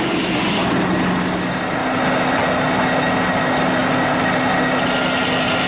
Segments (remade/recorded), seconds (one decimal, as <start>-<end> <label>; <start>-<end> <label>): 0.0-5.7 recorded